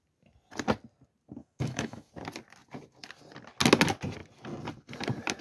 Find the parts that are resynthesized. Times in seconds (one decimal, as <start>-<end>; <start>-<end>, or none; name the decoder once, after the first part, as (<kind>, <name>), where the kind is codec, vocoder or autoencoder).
1.4-2.1 (autoencoder, DAC-VAE)